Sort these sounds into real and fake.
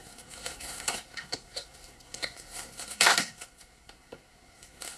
fake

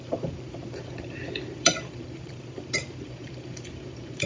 fake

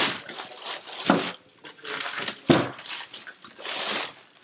real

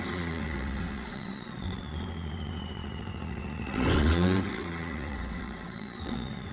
fake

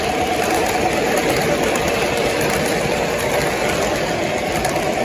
real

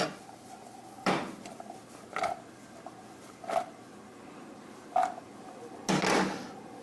real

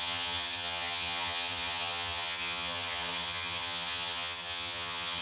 fake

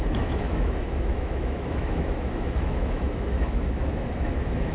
fake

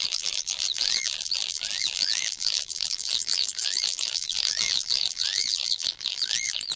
fake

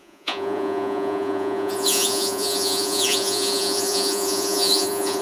fake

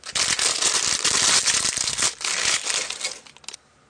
real